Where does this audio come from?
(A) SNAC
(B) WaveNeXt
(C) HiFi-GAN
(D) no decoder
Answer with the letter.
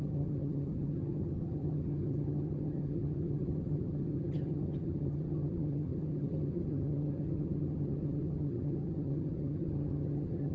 C